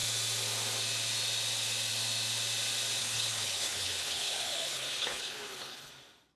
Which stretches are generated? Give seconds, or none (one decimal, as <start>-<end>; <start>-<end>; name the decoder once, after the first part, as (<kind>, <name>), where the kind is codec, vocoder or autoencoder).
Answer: 3.0-5.9 (codec, HILCodec)

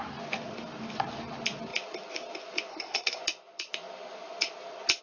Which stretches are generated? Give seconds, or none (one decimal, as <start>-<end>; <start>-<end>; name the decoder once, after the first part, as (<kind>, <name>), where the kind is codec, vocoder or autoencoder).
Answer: 2.7-3.2 (codec, SNAC)

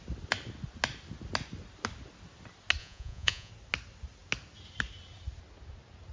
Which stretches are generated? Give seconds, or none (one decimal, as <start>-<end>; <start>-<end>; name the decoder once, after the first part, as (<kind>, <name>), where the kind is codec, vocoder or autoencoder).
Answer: 2.8-3.5 (vocoder, Vocos)

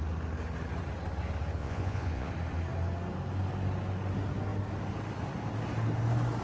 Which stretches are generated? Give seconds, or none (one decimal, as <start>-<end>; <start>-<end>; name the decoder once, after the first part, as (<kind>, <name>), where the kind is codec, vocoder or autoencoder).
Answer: 1.6-2.3 (vocoder, Vocos)

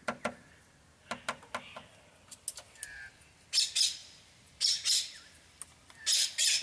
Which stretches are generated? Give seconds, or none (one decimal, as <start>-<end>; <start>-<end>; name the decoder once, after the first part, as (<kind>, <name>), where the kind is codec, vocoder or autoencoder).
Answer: none